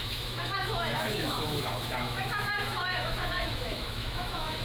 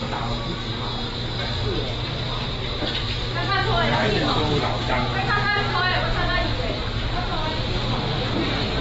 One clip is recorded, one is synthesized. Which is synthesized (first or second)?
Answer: first